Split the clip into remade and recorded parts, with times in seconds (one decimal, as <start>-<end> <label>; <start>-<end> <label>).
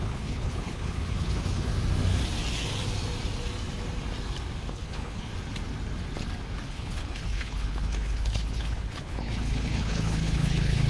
0.0-1.7 remade; 1.7-4.7 recorded; 4.7-5.3 remade; 5.3-6.7 recorded; 6.7-10.9 remade